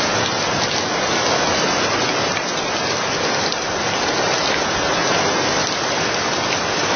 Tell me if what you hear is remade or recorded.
recorded